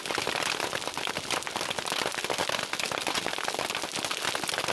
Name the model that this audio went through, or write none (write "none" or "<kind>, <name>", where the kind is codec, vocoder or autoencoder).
none